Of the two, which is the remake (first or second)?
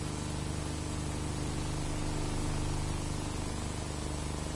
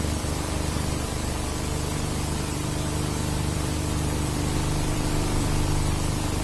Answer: second